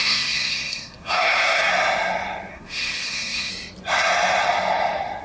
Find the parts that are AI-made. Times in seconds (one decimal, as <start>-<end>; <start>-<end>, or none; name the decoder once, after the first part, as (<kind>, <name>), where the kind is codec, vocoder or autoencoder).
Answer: 0.0-1.7 (codec, SNAC); 2.5-3.5